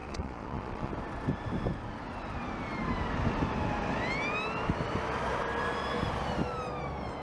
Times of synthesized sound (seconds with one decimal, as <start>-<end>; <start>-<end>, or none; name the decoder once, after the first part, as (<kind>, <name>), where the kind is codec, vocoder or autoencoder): 0.0-0.9 (vocoder, Vocos)